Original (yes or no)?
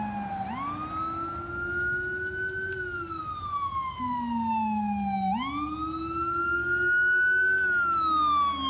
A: yes